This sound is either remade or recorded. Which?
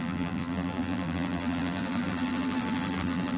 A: remade